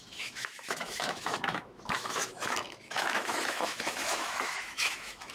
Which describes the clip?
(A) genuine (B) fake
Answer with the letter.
B